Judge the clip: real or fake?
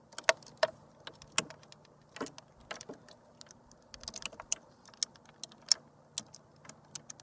real